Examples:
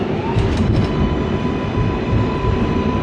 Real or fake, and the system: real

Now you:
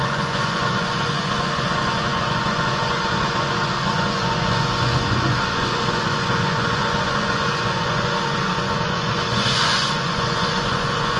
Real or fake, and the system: fake, vocoder, Vocos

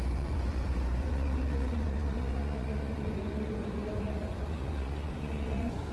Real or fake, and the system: fake, vocoder, Vocos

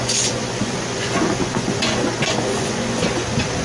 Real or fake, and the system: fake, vocoder, Vocos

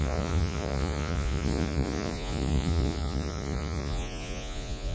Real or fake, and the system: fake, vocoder, Vocos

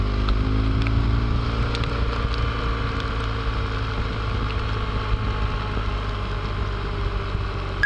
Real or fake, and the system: real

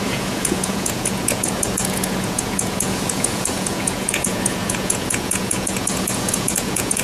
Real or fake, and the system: fake, vocoder, Vocos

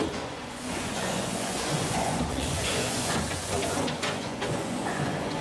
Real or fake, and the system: fake, vocoder, Vocos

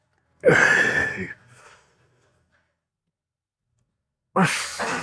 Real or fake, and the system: real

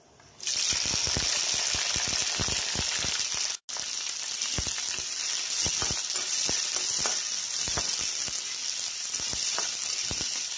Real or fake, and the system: real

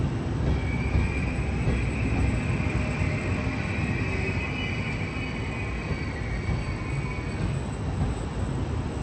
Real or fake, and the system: real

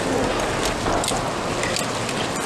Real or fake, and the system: real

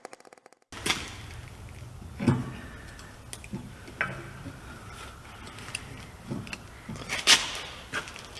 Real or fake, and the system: real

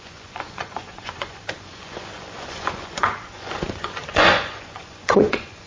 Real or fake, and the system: fake, vocoder, Vocos